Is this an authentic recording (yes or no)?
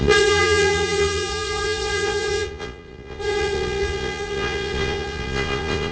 no